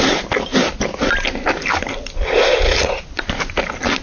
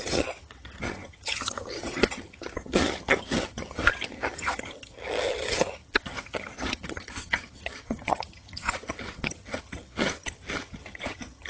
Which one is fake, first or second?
second